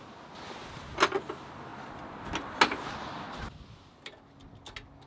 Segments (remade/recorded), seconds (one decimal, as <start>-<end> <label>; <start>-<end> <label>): 0.0-5.1 recorded